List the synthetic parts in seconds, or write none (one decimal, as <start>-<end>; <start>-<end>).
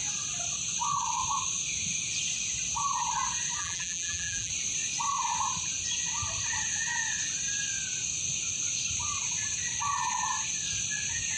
3.6-4.5